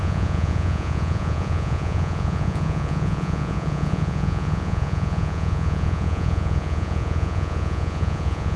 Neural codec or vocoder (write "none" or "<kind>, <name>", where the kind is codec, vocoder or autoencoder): vocoder, Vocos